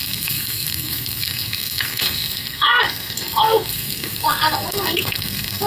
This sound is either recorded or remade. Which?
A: remade